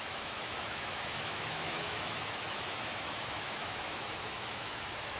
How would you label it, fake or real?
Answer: fake